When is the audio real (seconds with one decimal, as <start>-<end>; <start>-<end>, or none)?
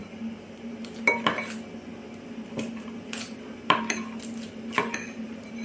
0.7-5.6